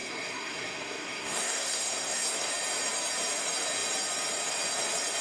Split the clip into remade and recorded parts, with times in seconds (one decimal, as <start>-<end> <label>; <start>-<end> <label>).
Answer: 0.0-2.5 remade; 2.5-5.2 recorded